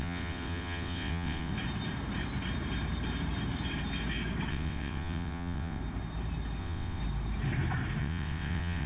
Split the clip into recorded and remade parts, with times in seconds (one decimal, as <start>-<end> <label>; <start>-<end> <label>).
0.0-1.5 remade; 1.5-4.5 recorded; 4.5-5.8 remade; 5.8-6.6 recorded; 6.6-7.0 remade; 7.0-8.0 recorded; 8.0-8.9 remade

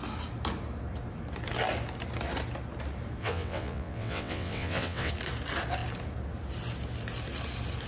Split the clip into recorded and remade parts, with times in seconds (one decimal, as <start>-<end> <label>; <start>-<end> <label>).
0.0-3.2 recorded; 3.2-5.1 remade; 5.1-7.9 recorded

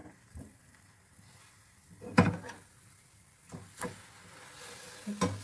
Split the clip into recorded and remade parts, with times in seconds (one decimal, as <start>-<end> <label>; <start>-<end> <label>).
0.0-5.4 recorded

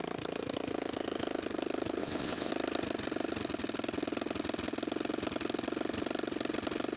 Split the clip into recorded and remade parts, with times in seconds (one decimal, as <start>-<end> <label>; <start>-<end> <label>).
0.0-2.0 recorded; 2.0-2.5 remade; 2.5-7.0 recorded

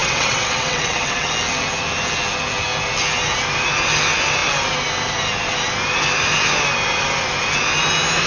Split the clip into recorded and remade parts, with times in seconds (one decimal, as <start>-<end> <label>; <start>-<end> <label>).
0.0-1.3 remade; 1.3-8.3 recorded